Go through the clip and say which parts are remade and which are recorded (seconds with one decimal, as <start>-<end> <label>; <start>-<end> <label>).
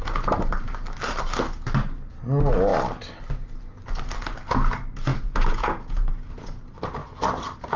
0.0-5.1 recorded; 5.1-6.6 remade; 6.6-7.8 recorded